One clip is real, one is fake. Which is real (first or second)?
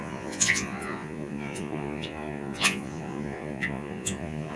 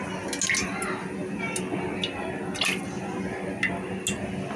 second